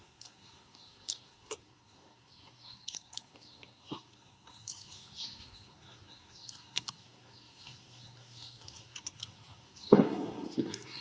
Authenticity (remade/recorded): remade